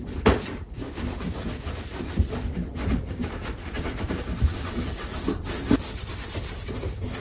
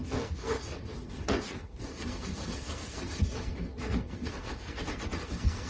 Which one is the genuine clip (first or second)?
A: first